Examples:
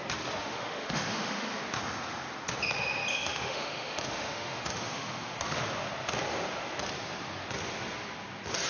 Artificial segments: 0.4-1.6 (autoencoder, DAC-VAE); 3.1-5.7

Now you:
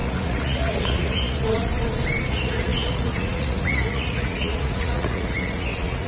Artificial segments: 0.0-1.7 (vocoder, Vocos); 2.3-6.1

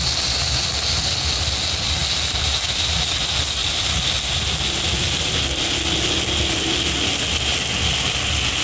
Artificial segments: none

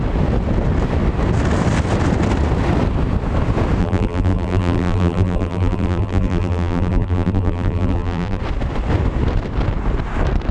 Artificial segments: 3.8-8.4 (vocoder, BigVGAN v2)

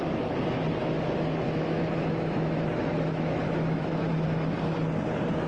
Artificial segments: 0.8-4.1 (autoencoder, DAC-VAE)

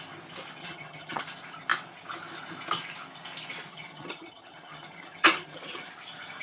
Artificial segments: 0.6-1.2 (vocoder, HiFi-GAN); 3.7-5.9

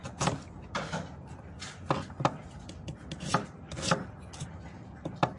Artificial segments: none